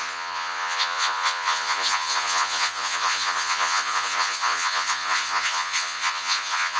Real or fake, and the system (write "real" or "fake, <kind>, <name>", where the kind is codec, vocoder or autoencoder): fake, vocoder, Vocos